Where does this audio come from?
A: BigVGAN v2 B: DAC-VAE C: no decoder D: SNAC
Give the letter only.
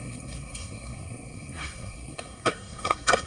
D